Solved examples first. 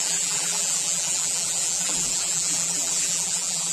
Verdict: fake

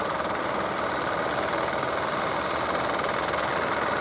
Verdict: real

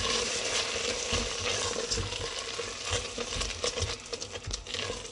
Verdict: real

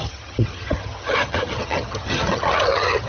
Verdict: fake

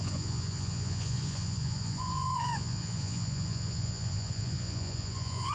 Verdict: fake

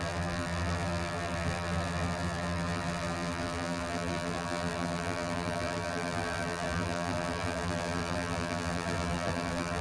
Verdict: fake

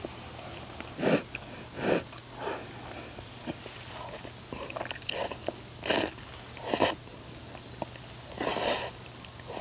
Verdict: real